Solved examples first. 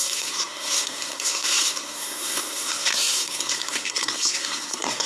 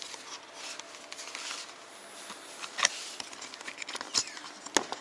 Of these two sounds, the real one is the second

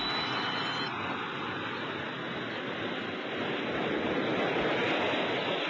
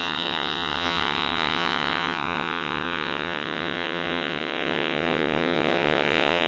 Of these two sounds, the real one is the first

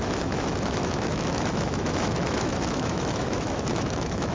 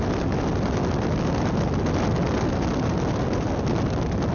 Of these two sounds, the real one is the second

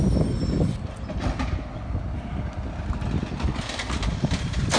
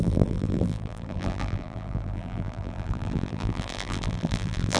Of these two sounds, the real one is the first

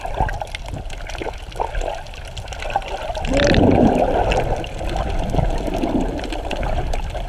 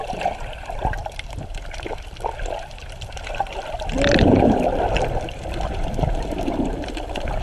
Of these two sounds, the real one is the first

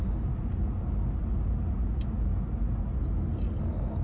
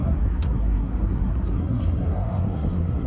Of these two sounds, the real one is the first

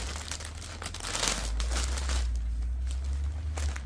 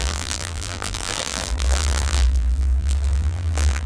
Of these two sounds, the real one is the first